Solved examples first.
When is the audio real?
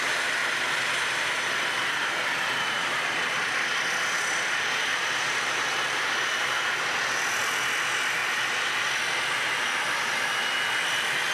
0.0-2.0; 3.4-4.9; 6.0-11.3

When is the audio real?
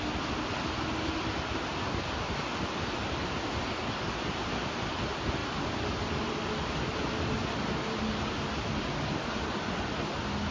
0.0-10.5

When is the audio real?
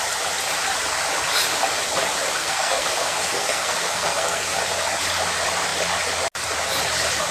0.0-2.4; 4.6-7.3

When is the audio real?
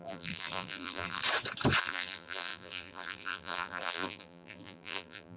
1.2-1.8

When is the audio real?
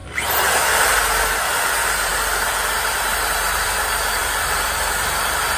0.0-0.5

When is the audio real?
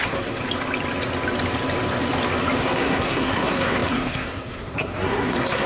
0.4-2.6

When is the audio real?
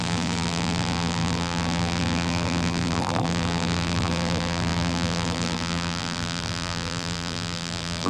none